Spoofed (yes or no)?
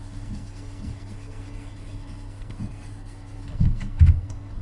yes